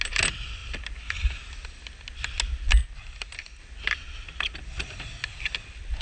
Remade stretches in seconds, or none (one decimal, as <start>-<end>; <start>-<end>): none